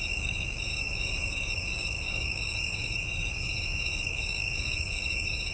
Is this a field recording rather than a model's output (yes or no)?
no